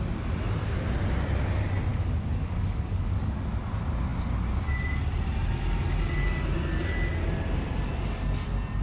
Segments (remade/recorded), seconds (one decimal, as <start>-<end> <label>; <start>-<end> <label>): 0.0-1.9 recorded; 1.9-3.4 remade; 3.4-8.8 recorded